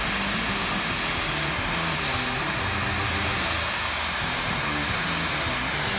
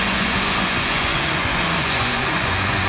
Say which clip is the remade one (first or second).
second